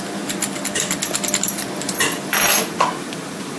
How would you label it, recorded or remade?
remade